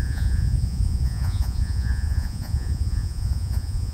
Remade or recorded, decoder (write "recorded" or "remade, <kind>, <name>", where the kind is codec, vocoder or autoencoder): remade, vocoder, Vocos